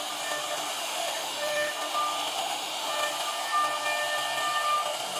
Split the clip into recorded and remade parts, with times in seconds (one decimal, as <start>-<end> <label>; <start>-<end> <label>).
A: 0.0-0.8 recorded; 0.8-1.7 remade; 1.7-2.4 recorded; 2.4-2.9 remade; 2.9-5.2 recorded